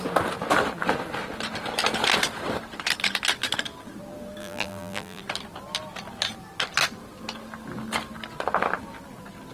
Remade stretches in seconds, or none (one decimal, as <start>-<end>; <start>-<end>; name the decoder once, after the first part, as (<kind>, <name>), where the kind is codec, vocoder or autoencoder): 4.4-5.2 (vocoder, BigVGAN v2)